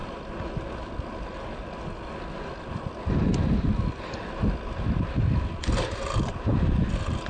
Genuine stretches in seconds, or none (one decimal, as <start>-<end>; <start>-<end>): 0.0-7.3